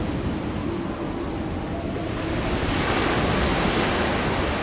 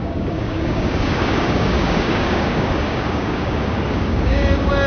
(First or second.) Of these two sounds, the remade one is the second